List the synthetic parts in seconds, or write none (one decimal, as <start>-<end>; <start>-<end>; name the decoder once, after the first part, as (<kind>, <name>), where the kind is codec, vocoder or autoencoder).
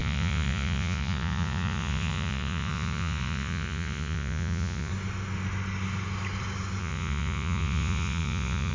0.0-4.9 (vocoder, Vocos); 6.8-8.7